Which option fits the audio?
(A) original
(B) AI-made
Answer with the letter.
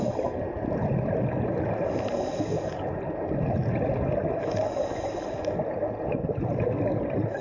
A